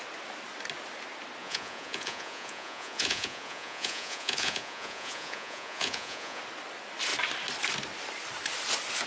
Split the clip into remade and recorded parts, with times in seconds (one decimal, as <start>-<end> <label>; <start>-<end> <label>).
0.0-1.4 recorded; 1.4-6.4 remade; 6.4-9.1 recorded